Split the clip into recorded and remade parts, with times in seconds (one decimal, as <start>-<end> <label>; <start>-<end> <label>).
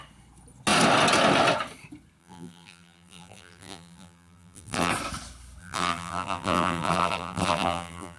0.0-2.2 recorded; 2.2-4.9 remade; 4.9-5.6 recorded; 5.6-8.2 remade